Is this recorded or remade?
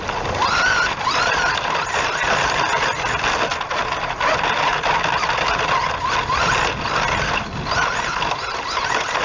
recorded